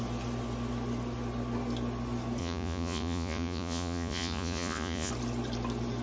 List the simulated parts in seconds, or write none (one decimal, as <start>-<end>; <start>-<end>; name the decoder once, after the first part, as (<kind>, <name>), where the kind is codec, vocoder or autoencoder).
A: 2.4-5.1 (vocoder, Vocos)